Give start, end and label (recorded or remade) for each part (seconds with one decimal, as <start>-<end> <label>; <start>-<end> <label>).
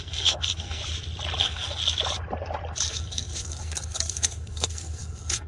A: 0.0-0.8 remade; 0.8-1.4 recorded; 1.4-1.8 remade; 1.8-2.9 recorded; 2.9-5.5 remade